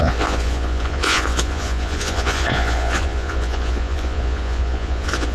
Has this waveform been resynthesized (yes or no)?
yes